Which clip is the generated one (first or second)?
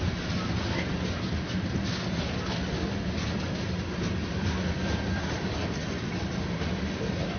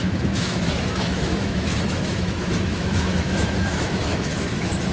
second